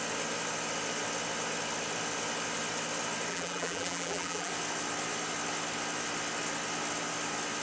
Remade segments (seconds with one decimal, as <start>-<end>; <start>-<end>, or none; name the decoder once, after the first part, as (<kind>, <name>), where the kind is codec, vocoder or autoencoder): 3.3-4.5 (vocoder, BigVGAN v2)